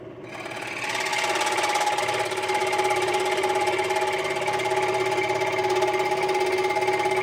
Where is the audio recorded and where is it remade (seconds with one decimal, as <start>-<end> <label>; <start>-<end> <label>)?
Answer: 0.0-2.6 recorded; 2.6-4.0 remade; 4.0-7.2 recorded